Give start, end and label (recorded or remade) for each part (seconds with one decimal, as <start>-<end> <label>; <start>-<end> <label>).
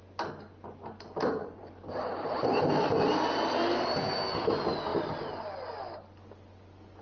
0.0-1.4 recorded; 1.4-3.1 remade; 3.1-7.0 recorded